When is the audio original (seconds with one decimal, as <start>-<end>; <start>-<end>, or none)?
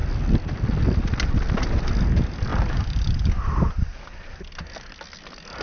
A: 0.0-2.5; 3.7-5.6